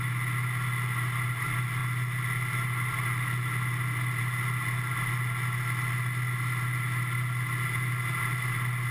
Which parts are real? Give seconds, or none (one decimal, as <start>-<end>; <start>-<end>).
0.0-8.9